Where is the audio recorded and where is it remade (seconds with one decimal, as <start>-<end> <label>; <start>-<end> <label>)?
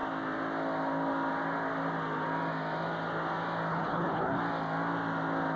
0.0-3.7 recorded; 3.7-4.4 remade; 4.4-5.6 recorded